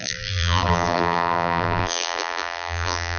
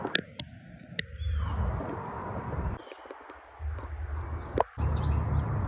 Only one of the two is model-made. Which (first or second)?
first